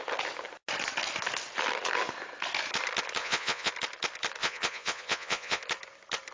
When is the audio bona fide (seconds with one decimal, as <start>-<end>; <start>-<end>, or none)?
0.0-3.2; 3.7-4.4; 5.6-6.3